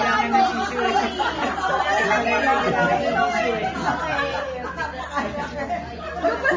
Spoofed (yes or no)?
no